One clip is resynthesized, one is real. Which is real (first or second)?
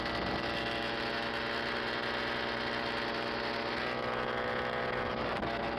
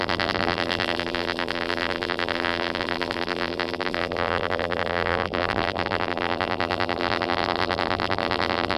first